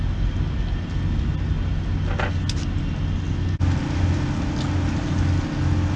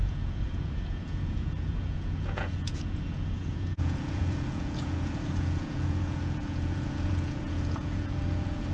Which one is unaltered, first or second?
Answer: first